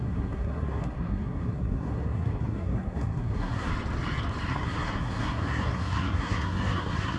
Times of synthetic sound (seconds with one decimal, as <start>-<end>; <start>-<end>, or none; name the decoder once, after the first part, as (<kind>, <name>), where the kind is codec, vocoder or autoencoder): 0.0-3.7 (codec, SNAC); 4.5-7.2